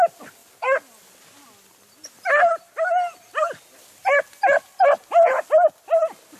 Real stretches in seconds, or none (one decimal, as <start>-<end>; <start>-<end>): 0.0-6.4